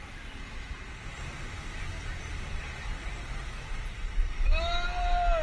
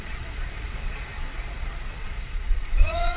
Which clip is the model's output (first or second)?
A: second